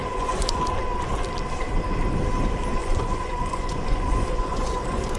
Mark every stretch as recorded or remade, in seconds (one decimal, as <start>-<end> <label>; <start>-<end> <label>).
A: 0.0-0.6 remade; 0.6-2.8 recorded; 2.8-5.2 remade